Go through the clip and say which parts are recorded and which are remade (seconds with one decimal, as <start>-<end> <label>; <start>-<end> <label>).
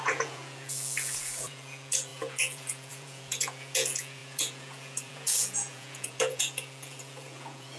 0.0-7.8 remade